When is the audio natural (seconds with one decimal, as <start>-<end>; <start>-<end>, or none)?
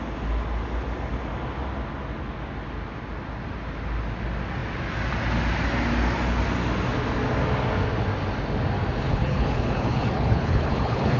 0.0-9.1